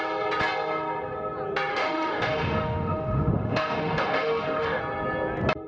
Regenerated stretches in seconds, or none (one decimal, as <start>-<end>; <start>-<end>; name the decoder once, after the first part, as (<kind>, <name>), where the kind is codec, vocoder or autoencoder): 1.7-4.8 (autoencoder, DAC-VAE)